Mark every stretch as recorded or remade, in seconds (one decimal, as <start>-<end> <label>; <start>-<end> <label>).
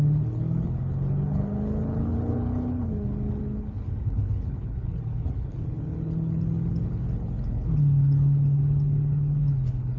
0.0-10.0 remade